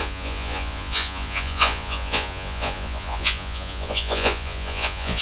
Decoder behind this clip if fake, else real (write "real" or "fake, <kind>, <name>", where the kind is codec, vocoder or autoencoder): fake, vocoder, Vocos